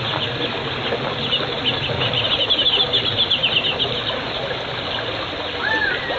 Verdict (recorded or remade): recorded